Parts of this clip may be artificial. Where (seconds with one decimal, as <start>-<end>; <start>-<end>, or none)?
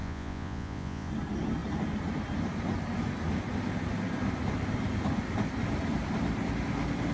0.0-1.1